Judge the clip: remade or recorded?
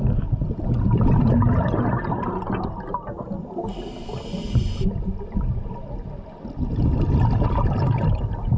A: recorded